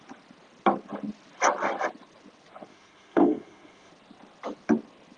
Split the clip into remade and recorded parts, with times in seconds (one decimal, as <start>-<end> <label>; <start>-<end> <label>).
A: 0.0-2.7 recorded; 2.7-3.9 remade; 3.9-5.2 recorded